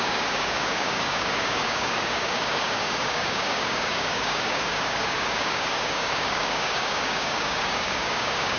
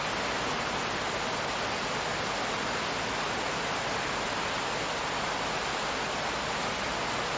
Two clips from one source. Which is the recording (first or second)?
second